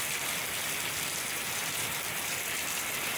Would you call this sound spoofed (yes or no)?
no